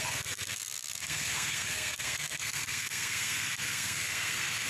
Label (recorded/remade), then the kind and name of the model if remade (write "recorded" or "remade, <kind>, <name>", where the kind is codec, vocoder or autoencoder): remade, codec, SNAC